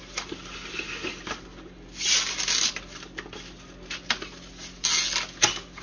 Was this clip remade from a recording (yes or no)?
no